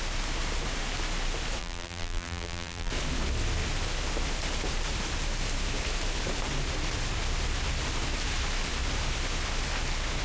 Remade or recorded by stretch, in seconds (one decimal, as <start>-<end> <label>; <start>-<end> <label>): 0.0-1.6 recorded; 1.6-2.9 remade; 2.9-10.2 recorded